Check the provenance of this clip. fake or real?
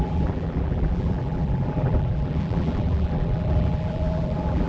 fake